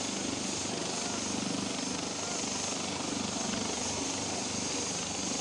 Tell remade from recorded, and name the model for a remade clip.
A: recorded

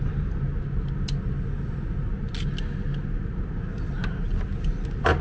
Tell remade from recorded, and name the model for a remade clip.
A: recorded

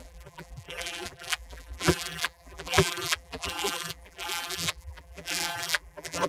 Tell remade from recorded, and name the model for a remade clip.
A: remade, vocoder, BigVGAN v2